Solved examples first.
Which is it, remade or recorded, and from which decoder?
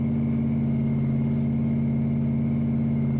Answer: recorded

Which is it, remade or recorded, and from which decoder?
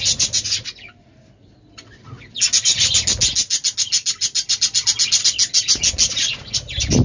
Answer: recorded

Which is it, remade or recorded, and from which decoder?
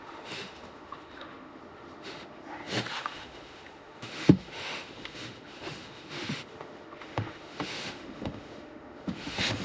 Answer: remade, autoencoder, DAC-VAE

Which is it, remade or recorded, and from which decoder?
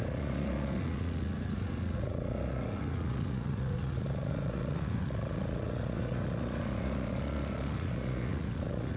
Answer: remade, vocoder, Vocos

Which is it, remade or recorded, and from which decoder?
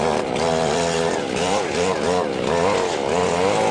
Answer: recorded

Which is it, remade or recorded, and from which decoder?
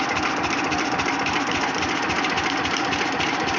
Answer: recorded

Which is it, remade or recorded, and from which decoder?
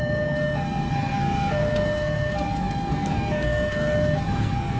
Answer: remade, codec, SNAC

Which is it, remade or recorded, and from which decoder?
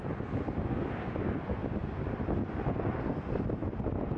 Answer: recorded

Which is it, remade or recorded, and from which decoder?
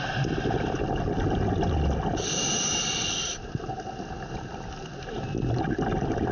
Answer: recorded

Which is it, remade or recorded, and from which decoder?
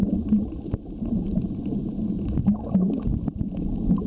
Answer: recorded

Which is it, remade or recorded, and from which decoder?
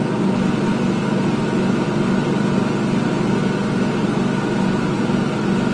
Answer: recorded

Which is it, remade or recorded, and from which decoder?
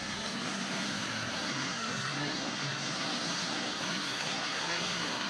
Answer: remade, codec, SNAC